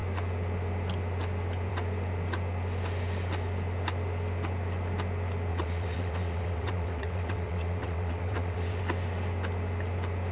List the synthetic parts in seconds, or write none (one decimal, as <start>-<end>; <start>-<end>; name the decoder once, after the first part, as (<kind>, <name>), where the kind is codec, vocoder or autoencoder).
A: 5.5-8.8 (vocoder, WaveNeXt)